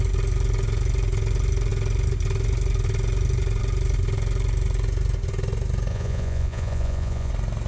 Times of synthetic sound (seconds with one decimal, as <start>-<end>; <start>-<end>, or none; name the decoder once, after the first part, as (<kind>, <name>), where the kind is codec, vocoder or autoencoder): 5.9-7.3 (vocoder, Vocos)